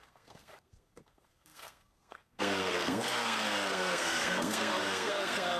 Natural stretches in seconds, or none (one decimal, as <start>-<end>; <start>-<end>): none